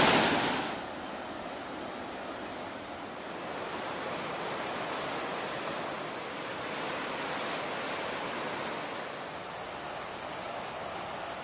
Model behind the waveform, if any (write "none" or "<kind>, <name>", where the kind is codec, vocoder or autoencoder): none